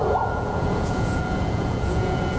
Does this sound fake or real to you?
fake